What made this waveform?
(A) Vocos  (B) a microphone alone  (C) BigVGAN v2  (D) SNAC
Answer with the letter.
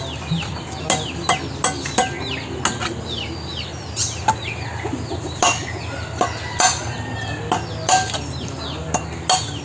B